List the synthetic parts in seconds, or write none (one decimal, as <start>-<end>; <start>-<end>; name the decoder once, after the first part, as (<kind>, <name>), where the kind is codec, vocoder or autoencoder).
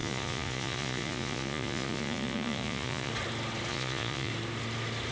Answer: 0.0-3.1 (vocoder, Vocos); 3.7-4.3